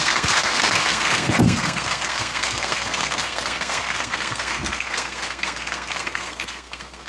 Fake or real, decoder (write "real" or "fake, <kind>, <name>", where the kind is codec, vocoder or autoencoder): fake, codec, SNAC